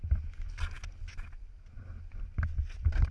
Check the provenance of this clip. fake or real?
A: real